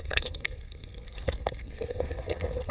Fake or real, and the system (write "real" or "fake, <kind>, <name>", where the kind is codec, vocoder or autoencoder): fake, codec, SNAC